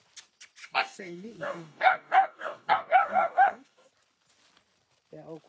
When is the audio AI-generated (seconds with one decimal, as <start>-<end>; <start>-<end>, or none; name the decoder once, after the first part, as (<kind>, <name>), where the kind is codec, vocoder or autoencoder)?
0.6-3.9 (codec, DAC)